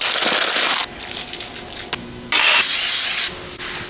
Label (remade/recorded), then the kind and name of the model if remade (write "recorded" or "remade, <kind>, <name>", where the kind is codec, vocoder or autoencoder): recorded